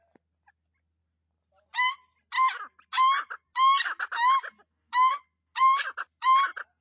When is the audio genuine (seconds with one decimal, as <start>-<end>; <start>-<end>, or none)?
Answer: 0.0-1.0; 1.9-6.8